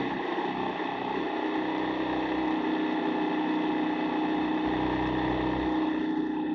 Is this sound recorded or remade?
recorded